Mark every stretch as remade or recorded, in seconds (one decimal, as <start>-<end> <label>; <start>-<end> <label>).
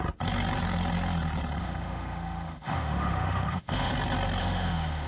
0.0-1.6 recorded; 1.6-3.9 remade; 3.9-4.4 recorded; 4.4-5.1 remade